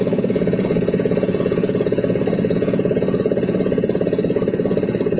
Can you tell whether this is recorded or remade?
remade